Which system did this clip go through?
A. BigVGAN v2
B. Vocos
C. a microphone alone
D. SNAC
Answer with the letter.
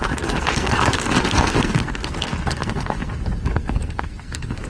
D